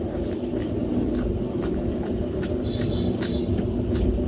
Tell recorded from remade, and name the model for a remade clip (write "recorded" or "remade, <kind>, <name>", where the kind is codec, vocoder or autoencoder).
recorded